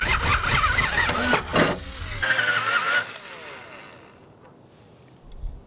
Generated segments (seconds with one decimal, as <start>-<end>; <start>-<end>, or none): none